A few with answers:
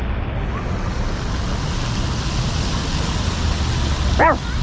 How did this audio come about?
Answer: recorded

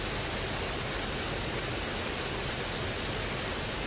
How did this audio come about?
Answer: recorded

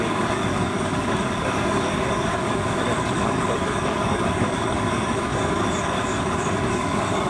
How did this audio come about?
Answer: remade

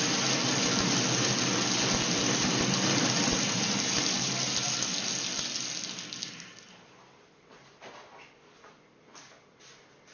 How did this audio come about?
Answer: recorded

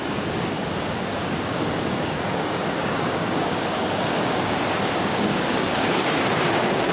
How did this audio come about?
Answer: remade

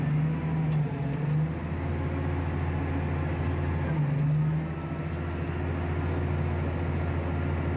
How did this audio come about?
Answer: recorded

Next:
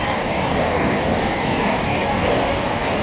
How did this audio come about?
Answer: remade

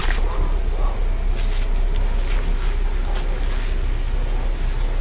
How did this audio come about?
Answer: recorded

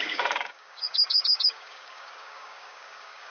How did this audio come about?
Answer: remade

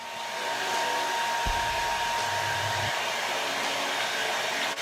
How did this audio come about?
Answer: recorded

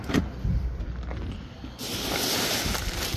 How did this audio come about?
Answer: recorded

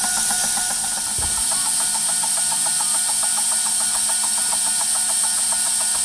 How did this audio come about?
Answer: recorded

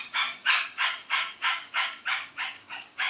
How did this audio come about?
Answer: remade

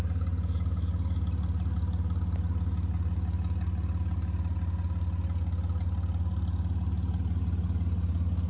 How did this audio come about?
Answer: recorded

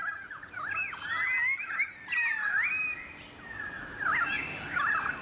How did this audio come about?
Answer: recorded